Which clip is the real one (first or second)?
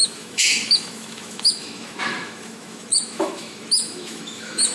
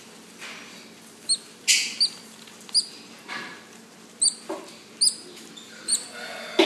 second